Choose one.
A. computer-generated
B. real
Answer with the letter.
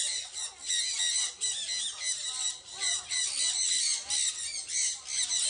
B